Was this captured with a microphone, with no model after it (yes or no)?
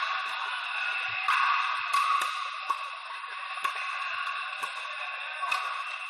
yes